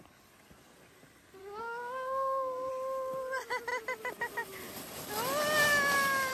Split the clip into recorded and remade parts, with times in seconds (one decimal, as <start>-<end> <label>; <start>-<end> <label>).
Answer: 0.0-1.4 recorded; 1.4-2.7 remade; 2.7-6.3 recorded